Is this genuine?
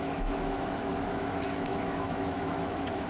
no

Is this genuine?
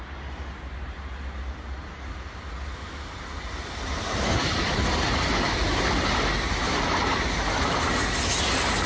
yes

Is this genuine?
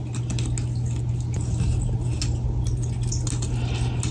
yes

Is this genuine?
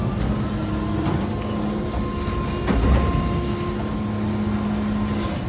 yes